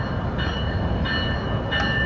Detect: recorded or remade recorded